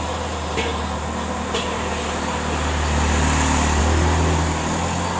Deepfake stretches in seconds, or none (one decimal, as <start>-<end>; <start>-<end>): none